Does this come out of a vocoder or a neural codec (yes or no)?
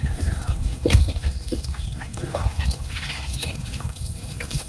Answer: yes